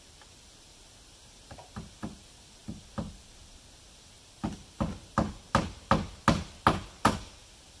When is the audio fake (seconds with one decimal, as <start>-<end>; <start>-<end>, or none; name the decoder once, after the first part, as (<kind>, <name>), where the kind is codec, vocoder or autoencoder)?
none